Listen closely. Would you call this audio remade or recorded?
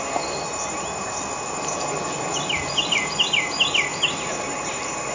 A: recorded